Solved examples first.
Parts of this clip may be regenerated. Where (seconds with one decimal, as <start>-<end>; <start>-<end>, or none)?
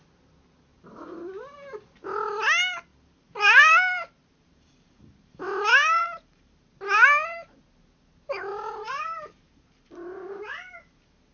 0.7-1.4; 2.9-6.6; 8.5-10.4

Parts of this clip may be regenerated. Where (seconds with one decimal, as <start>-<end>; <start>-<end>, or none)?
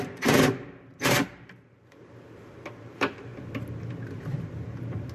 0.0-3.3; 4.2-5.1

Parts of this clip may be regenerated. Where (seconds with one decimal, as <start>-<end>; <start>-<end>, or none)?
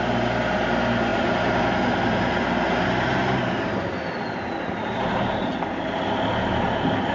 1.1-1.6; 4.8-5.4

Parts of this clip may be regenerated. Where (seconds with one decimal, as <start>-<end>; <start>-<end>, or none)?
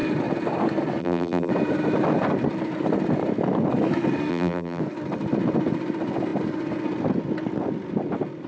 1.0-1.5; 4.3-4.8